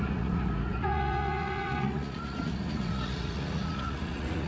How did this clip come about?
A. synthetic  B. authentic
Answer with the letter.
A